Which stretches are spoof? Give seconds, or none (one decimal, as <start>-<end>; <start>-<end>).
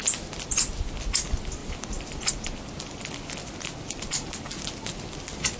none